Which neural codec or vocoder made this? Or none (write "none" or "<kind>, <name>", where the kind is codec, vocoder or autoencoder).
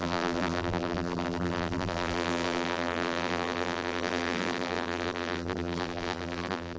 vocoder, BigVGAN v2